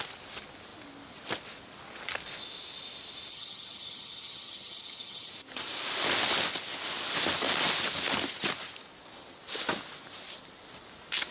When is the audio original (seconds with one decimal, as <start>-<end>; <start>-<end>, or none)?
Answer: 0.0-3.3; 5.3-11.3

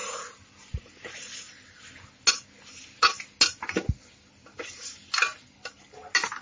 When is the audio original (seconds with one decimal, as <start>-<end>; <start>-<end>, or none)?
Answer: 0.0-6.4

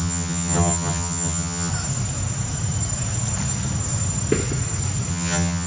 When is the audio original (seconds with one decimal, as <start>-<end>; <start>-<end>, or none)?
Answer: 1.7-5.1

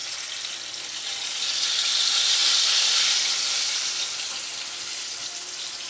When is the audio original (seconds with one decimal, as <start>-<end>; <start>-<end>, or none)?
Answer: 0.0-5.9

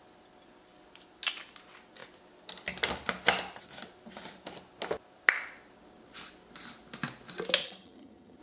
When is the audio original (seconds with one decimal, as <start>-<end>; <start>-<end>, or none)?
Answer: 0.0-7.6

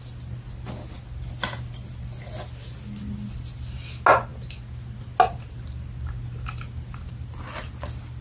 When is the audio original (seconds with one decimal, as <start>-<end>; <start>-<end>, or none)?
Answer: 0.0-8.2

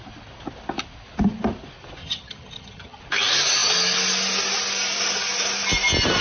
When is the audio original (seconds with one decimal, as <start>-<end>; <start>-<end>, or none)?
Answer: 0.0-2.0; 3.0-6.2